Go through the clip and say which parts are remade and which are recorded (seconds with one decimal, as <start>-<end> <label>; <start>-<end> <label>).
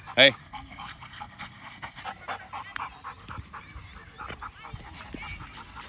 0.0-0.4 recorded; 0.4-2.0 remade; 2.0-5.9 recorded